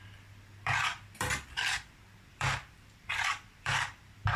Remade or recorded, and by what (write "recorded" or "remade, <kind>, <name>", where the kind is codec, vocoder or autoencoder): remade, vocoder, BigVGAN v2